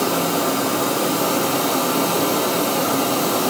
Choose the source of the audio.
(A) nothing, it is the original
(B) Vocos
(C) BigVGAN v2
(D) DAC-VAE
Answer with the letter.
A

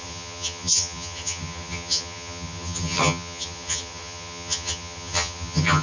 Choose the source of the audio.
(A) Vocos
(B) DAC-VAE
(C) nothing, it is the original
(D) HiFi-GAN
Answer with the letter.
D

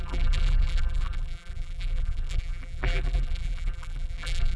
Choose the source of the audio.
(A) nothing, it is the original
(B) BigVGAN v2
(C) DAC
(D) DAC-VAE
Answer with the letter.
B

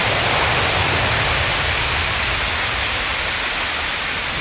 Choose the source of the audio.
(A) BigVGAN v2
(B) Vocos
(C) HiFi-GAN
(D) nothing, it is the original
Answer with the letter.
D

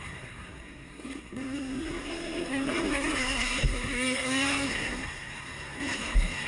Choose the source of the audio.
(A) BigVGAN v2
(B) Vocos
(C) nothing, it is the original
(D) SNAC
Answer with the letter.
D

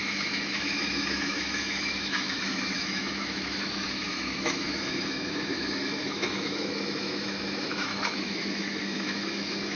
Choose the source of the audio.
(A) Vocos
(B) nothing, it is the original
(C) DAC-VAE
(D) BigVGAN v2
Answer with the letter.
C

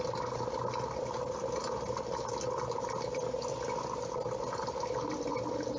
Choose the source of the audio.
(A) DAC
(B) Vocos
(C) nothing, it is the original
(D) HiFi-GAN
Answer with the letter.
C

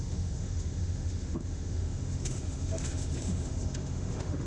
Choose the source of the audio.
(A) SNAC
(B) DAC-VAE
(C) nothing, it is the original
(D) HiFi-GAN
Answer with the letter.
B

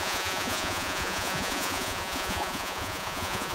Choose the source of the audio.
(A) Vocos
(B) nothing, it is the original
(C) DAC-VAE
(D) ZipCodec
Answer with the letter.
A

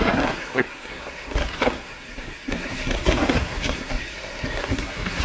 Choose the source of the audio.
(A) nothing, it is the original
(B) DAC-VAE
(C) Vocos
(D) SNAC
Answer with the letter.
D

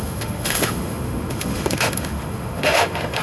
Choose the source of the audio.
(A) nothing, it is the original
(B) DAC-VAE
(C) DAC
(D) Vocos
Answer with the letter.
B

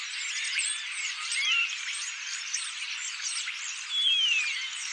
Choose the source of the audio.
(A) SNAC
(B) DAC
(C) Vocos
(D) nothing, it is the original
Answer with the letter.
D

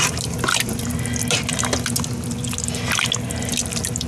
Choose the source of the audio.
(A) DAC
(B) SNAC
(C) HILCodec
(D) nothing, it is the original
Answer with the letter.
D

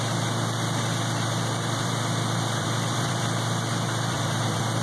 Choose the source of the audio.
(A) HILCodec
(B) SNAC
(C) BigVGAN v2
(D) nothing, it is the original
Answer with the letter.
C